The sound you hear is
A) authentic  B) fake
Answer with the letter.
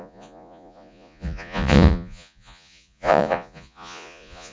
B